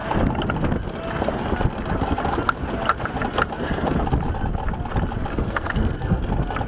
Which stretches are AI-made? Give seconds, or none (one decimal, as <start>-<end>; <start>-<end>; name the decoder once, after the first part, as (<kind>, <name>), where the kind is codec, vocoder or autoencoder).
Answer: 5.3-6.2 (codec, SNAC)